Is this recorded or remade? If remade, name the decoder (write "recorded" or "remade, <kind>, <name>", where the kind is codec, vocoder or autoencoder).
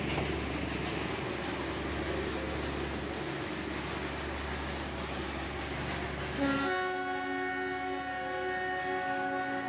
recorded